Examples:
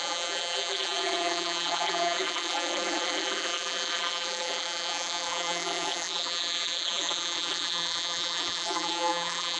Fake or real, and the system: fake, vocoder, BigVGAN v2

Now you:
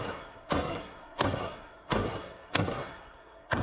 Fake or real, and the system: fake, codec, SNAC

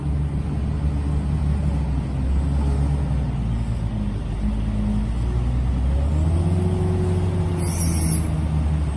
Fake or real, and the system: real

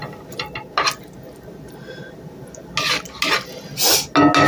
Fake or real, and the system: real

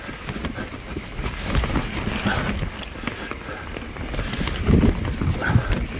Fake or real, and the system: real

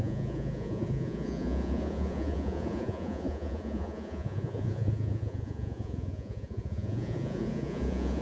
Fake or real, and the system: fake, vocoder, Vocos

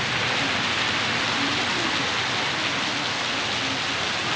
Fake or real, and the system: real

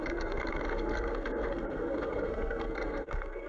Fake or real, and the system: fake, codec, SNAC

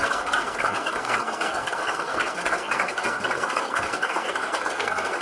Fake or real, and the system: fake, codec, SNAC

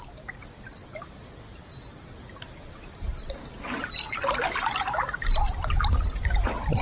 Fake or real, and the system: real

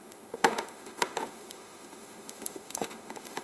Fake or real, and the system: fake, autoencoder, DAC-VAE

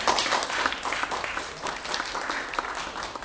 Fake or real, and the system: real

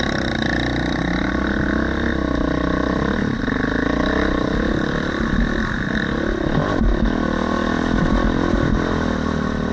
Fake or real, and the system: real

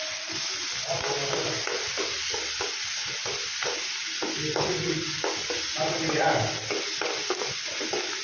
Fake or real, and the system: real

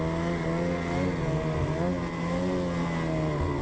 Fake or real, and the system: real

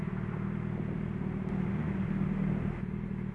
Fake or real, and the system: real